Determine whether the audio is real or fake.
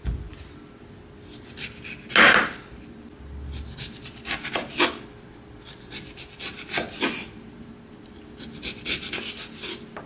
real